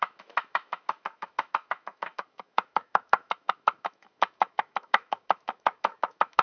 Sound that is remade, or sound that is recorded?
remade